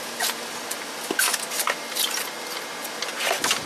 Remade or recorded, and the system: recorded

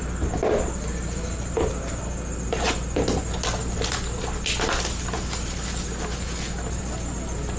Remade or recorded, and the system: recorded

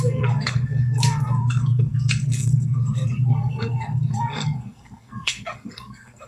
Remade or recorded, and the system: remade, codec, SNAC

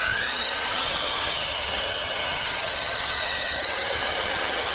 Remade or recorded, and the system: remade, vocoder, HiFi-GAN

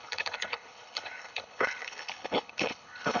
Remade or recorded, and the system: remade, codec, HILCodec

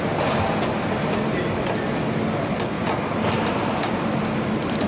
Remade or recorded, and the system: recorded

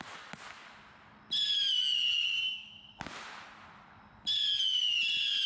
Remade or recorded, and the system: recorded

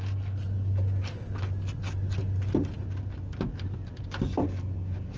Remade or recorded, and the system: recorded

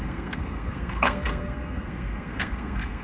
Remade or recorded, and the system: remade, codec, SNAC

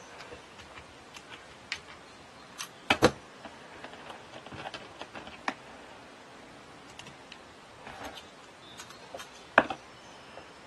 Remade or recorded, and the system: recorded